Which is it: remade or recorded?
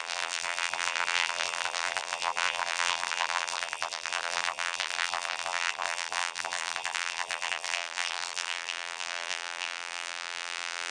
remade